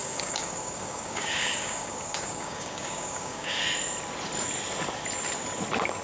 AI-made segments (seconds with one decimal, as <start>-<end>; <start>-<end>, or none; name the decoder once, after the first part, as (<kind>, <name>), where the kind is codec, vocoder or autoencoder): 0.0-3.6 (codec, DAC)